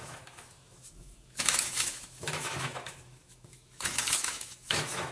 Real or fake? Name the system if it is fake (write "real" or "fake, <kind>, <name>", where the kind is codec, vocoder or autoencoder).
fake, autoencoder, DAC-VAE